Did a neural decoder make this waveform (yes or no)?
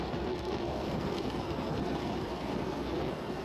yes